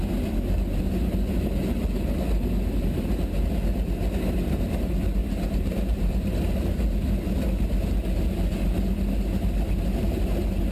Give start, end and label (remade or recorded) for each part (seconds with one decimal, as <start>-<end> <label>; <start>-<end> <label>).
0.0-5.2 recorded; 5.2-6.1 remade; 6.1-10.7 recorded